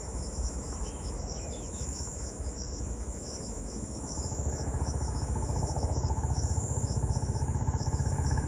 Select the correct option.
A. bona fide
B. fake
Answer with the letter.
B